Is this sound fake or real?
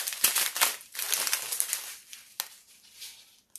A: real